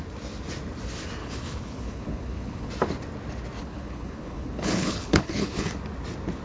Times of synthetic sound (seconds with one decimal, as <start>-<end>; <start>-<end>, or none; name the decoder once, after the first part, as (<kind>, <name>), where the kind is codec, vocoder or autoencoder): 1.2-2.7 (codec, HILCodec); 3.6-5.7